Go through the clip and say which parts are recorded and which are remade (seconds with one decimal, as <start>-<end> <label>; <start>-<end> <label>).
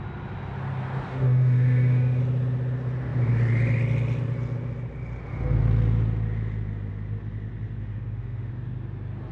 0.0-1.1 recorded; 1.1-2.2 remade; 2.2-7.8 recorded; 7.8-8.5 remade; 8.5-9.3 recorded